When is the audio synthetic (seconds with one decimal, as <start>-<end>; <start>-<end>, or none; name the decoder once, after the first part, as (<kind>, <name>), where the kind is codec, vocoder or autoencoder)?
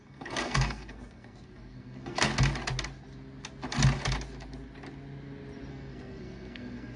0.0-2.3 (codec, SNAC); 5.7-7.0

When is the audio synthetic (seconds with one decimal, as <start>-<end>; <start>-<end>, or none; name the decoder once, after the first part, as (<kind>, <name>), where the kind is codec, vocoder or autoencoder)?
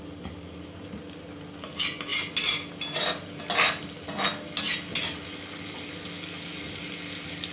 none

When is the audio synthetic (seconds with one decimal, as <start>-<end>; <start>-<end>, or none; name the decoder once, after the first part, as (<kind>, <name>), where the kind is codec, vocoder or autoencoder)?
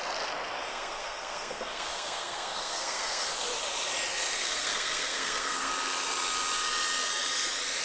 0.7-3.3 (codec, SNAC); 4.4-5.7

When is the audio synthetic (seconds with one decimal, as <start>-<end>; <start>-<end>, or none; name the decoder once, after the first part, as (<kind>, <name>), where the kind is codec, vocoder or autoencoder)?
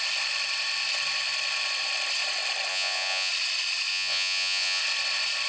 2.7-3.3 (vocoder, Vocos); 3.9-4.8